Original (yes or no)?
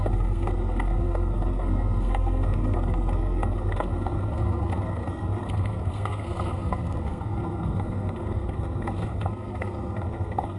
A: no